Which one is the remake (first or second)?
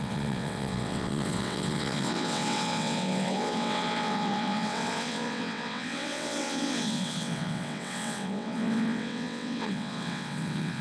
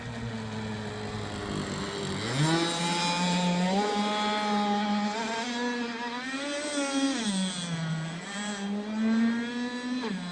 first